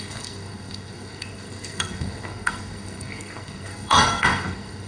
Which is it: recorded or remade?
remade